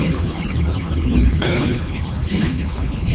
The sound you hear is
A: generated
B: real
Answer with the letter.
A